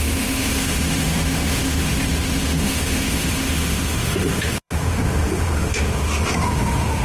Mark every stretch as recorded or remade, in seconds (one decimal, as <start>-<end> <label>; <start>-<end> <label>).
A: 0.0-7.0 remade